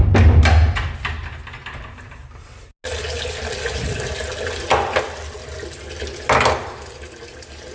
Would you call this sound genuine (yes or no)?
yes